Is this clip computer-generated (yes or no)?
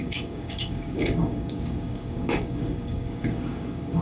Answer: yes